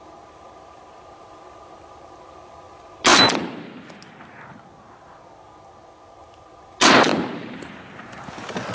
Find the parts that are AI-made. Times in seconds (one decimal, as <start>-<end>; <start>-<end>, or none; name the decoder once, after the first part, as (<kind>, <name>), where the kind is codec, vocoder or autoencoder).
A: none